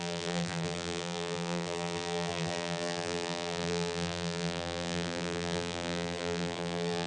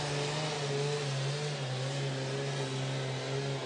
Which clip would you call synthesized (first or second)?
first